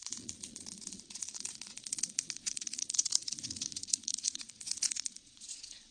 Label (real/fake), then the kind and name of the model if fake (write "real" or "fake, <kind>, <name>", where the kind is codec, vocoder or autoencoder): fake, vocoder, Vocos